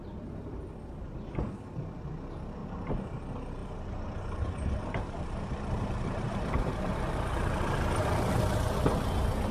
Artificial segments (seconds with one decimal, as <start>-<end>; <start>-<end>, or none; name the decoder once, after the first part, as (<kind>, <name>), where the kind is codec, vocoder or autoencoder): 2.6-3.2 (vocoder, BigVGAN v2); 3.6-8.4